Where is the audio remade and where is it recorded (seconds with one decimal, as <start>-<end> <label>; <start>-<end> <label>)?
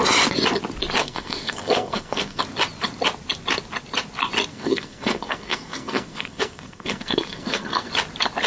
0.0-1.0 recorded; 1.0-2.4 remade; 2.4-4.5 recorded; 4.5-7.9 remade; 7.9-8.5 recorded